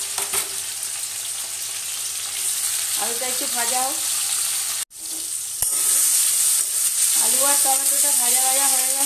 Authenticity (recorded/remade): recorded